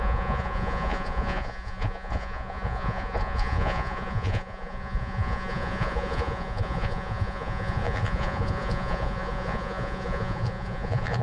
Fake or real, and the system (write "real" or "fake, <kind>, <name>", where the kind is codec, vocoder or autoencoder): fake, vocoder, Vocos